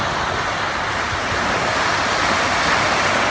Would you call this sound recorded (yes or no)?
yes